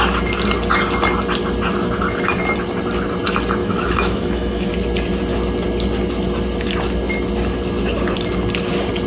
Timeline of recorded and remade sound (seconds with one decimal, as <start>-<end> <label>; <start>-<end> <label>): 0.0-3.6 recorded; 3.6-4.7 remade; 4.7-9.1 recorded